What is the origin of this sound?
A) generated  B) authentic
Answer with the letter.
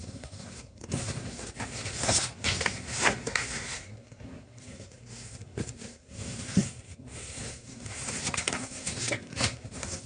A